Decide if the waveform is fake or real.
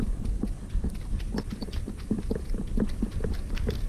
real